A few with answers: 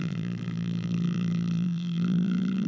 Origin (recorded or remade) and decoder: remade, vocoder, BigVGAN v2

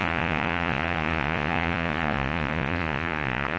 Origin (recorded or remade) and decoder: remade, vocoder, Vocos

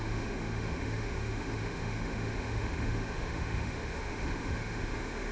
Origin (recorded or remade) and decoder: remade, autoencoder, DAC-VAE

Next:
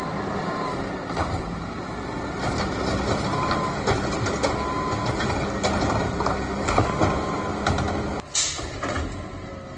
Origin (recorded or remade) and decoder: recorded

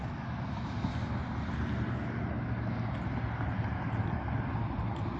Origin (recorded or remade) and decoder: recorded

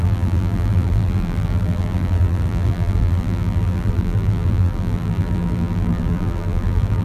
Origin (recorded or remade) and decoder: remade, vocoder, BigVGAN v2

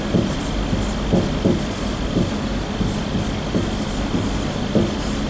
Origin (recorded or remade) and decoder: recorded